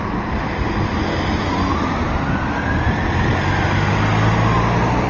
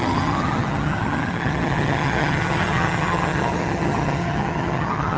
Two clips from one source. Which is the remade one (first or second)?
second